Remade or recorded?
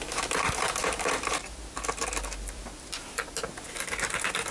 recorded